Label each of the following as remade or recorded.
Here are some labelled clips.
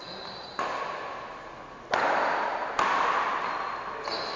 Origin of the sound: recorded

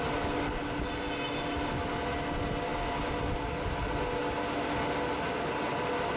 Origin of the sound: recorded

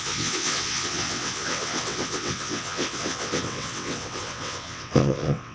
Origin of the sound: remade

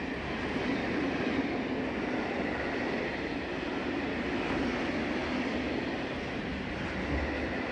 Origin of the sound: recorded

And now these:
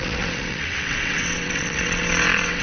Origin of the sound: remade